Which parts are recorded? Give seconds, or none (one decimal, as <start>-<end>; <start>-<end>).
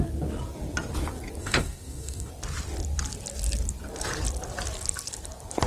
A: 0.0-1.4; 2.3-5.7